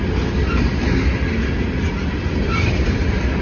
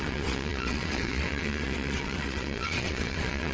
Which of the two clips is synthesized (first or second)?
second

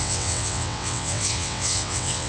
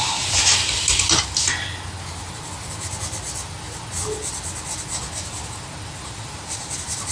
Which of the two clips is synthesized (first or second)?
first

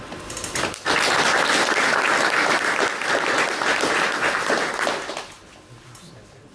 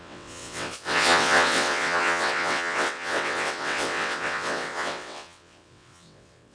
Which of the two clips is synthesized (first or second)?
second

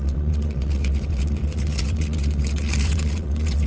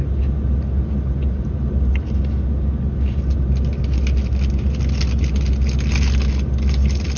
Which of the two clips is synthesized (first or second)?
first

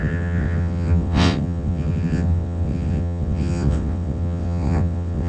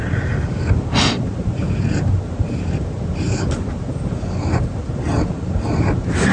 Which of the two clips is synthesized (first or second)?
first